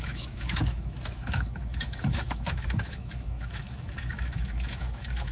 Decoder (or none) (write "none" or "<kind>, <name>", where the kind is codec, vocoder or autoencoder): autoencoder, DAC-VAE